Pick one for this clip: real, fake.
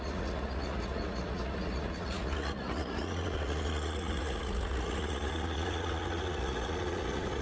fake